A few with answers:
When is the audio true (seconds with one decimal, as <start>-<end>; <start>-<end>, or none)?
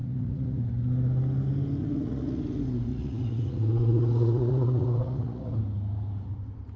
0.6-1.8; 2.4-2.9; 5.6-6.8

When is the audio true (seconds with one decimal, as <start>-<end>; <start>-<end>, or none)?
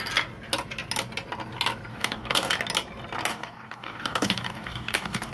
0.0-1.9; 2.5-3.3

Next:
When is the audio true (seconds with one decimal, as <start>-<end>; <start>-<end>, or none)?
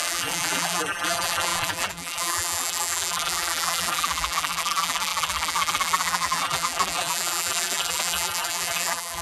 none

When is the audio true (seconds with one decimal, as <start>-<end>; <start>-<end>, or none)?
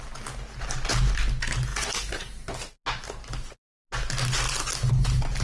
0.0-5.4